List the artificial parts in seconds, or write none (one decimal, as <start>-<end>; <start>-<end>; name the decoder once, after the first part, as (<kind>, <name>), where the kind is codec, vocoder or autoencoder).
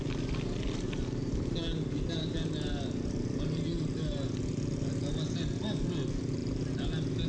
none